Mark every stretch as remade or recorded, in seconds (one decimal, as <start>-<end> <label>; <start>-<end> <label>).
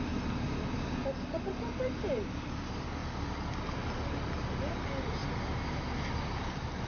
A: 0.0-6.9 recorded